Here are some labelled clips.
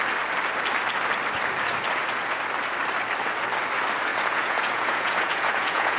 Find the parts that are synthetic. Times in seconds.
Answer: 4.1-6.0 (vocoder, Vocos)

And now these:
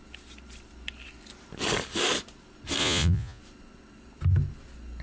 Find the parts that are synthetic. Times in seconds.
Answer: 2.8-3.4 (vocoder, Vocos)

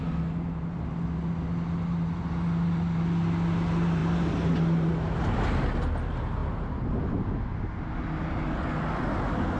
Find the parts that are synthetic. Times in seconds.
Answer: none

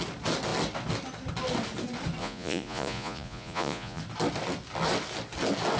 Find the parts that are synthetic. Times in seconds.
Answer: 2.2-4.0 (vocoder, Vocos)

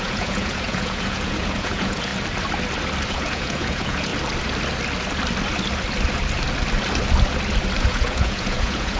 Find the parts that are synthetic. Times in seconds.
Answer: 0.0-2.1 (vocoder, Vocos); 3.1-4.1; 7.8-9.0

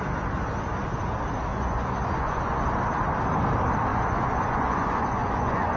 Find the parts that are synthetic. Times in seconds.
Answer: 1.5-2.6 (vocoder, Vocos); 3.9-5.8

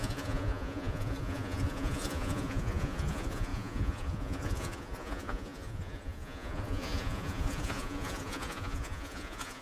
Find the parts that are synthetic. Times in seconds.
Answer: 0.0-9.6 (vocoder, Vocos)

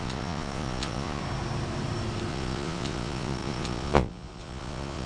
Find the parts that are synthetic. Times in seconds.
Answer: 0.0-1.2 (vocoder, Vocos); 2.3-5.1